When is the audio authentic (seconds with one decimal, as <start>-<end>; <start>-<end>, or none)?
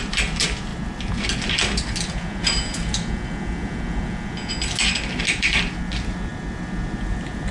0.0-7.5